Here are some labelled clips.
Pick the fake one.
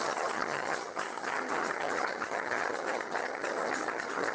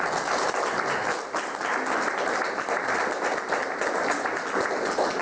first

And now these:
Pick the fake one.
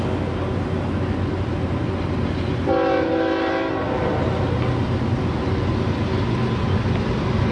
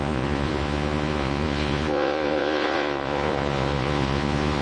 second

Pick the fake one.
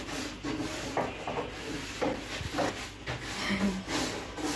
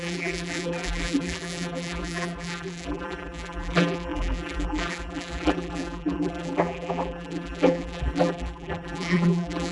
second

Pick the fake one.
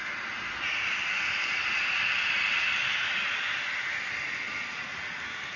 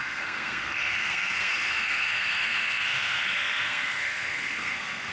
second